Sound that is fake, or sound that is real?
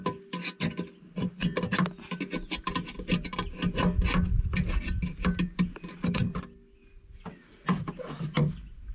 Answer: real